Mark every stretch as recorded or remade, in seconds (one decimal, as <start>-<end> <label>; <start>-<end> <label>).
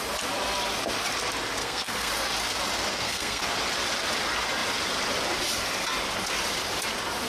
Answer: 0.0-1.6 recorded; 1.6-2.1 remade; 2.1-2.9 recorded; 2.9-3.4 remade; 3.4-7.3 recorded